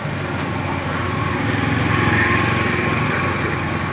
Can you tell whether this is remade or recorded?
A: recorded